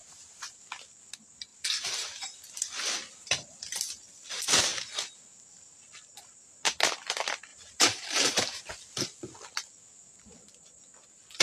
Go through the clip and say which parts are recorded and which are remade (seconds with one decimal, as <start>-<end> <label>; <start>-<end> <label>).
0.0-0.6 remade; 0.6-1.5 recorded; 1.5-2.4 remade; 2.4-7.5 recorded; 7.5-8.6 remade; 8.6-11.4 recorded

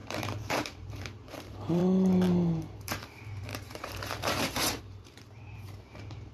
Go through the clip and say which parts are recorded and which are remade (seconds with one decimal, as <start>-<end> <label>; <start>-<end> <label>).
0.0-1.8 remade; 1.8-2.6 recorded; 2.6-6.3 remade

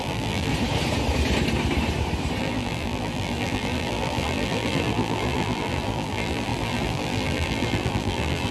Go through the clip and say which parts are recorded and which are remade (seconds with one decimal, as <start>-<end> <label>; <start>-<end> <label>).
0.0-0.5 remade; 0.5-2.4 recorded; 2.4-8.5 remade